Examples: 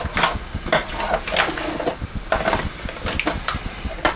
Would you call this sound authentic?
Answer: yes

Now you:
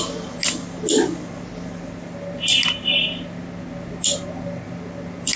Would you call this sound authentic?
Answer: yes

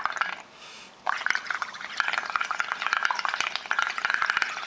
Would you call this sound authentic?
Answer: yes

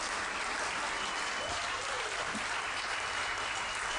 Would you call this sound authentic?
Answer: yes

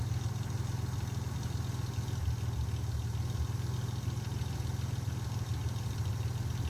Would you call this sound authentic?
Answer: yes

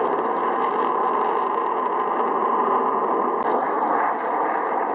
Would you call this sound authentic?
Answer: yes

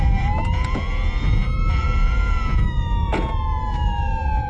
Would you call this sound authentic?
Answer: no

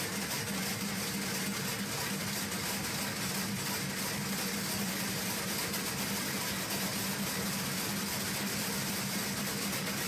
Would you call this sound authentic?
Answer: yes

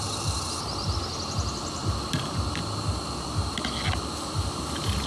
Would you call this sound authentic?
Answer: yes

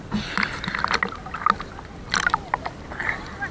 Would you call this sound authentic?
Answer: yes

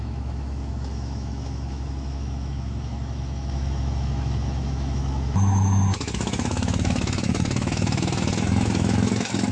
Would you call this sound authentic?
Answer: no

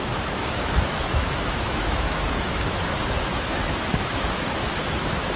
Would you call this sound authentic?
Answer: no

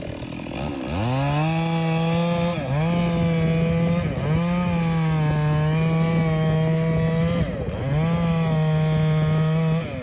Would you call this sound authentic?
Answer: yes